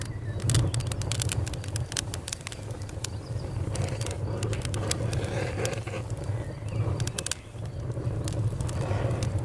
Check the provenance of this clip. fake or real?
real